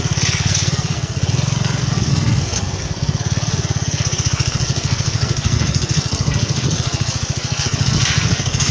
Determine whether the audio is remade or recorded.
remade